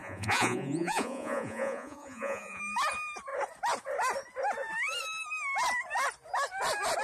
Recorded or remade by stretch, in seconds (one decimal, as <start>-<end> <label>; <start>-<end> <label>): 0.0-2.6 remade; 2.6-7.0 recorded